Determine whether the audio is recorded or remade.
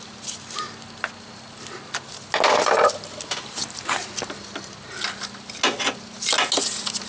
recorded